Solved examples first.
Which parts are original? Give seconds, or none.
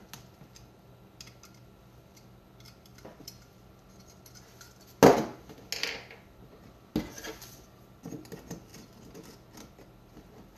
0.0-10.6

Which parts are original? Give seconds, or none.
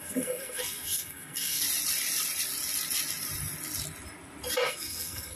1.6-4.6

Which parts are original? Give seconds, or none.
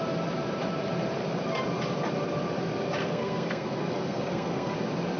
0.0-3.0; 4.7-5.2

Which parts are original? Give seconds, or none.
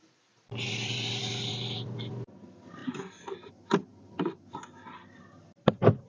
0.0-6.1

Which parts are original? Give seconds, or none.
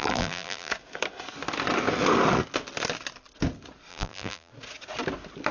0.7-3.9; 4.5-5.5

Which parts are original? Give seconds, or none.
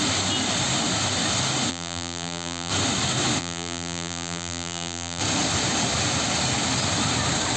0.0-1.7; 2.7-3.4; 5.2-7.6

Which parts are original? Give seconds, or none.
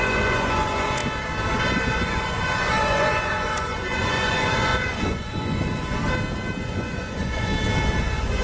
1.0-1.6; 6.0-6.6; 7.5-8.0